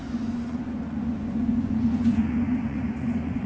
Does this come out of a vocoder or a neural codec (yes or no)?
yes